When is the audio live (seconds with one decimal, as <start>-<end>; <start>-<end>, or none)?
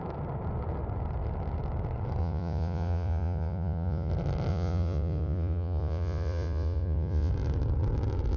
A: 0.0-2.2; 4.1-4.5; 7.3-8.4